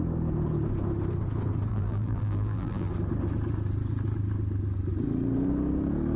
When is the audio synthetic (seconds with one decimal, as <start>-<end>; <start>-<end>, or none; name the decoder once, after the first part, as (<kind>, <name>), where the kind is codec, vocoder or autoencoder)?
1.7-2.9 (vocoder, BigVGAN v2)